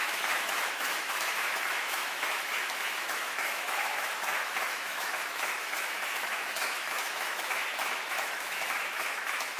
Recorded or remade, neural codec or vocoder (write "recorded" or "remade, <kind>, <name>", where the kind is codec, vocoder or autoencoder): remade, autoencoder, DAC-VAE